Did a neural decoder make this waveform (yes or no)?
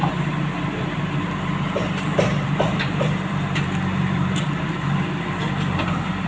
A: yes